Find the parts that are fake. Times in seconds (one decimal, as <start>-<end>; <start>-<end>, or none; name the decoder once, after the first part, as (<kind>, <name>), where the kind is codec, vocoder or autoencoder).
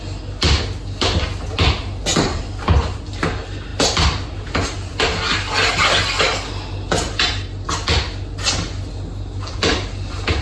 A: 2.1-2.8 (vocoder, BigVGAN v2)